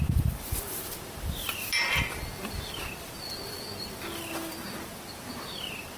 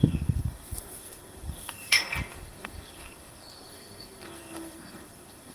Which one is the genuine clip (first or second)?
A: first